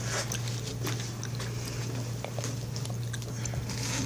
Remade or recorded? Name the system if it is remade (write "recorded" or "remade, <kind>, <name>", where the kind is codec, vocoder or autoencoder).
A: recorded